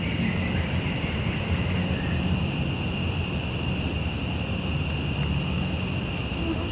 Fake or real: real